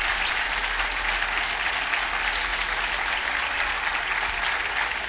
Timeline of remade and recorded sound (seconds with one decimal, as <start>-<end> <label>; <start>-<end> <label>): 0.0-5.1 recorded